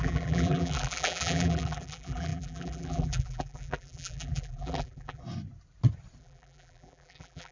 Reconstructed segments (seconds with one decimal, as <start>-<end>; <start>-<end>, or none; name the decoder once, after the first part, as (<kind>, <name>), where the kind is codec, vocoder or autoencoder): 0.0-5.2 (vocoder, BigVGAN v2); 6.2-7.5